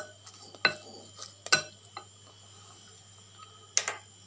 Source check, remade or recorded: recorded